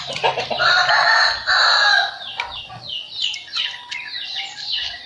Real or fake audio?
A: real